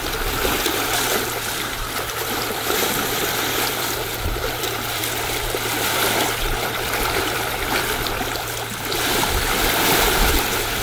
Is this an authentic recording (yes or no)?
no